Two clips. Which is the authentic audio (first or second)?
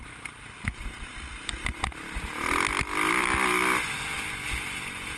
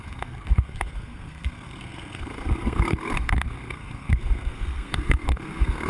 first